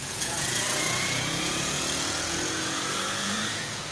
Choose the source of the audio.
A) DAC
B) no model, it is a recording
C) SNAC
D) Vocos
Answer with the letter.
D